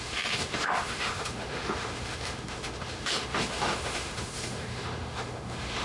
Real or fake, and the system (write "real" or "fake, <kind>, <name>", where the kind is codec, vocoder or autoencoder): fake, autoencoder, DAC-VAE